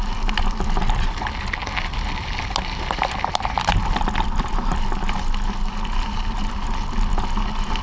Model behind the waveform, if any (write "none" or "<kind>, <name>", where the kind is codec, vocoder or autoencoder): none